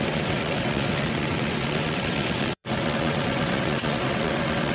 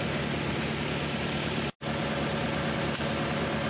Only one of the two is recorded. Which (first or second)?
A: second